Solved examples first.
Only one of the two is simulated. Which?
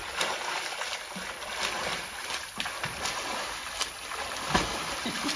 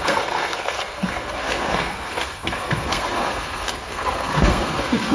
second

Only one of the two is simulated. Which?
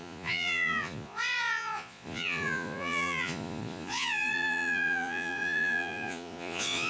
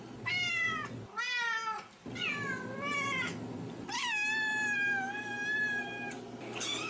first